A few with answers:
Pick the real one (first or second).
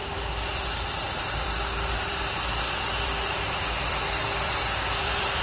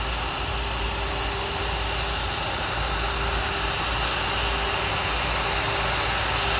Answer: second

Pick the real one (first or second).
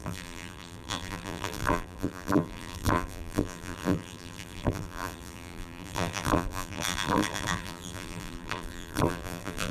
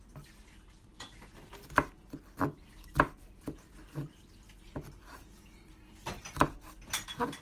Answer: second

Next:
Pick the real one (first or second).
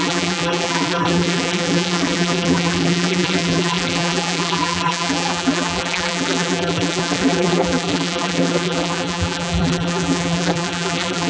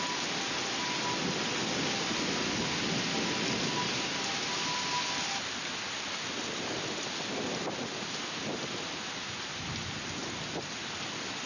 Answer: second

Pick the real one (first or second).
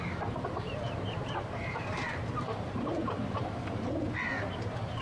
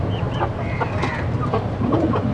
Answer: second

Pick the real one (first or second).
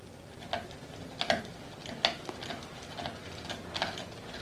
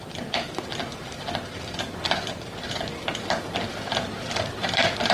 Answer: first